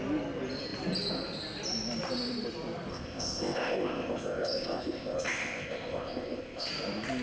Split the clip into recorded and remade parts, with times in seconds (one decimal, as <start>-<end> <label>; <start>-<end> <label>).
0.0-2.9 recorded; 2.9-6.7 remade; 6.7-7.2 recorded